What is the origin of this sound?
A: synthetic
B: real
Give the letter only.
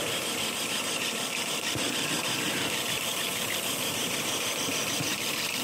A